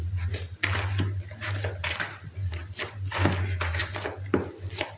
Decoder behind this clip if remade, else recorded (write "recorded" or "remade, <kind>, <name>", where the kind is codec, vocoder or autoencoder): recorded